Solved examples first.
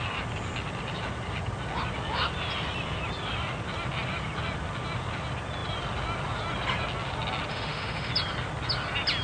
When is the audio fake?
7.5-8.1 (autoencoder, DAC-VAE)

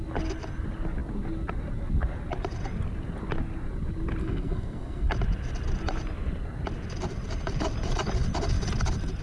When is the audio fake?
4.2-5.1 (codec, SNAC)

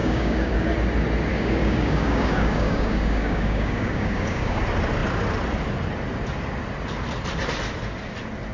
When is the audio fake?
0.0-0.7 (codec, DAC); 1.3-4.6

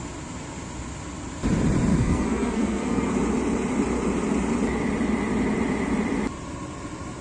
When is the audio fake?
1.9-3.1 (codec, SNAC)

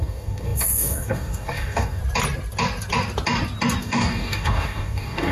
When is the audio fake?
0.0-2.0 (codec, DAC); 3.8-5.3